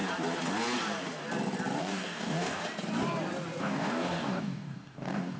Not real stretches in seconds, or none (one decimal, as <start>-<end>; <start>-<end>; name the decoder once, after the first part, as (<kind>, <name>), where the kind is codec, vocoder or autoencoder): 1.8-2.6 (codec, DAC); 3.6-5.4